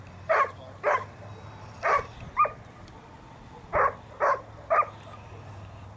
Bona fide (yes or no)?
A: yes